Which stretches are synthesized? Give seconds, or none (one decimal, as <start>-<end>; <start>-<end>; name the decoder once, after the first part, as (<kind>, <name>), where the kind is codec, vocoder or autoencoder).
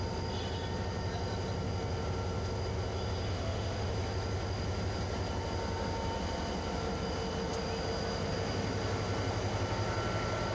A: 3.3-3.9 (autoencoder, DAC-VAE)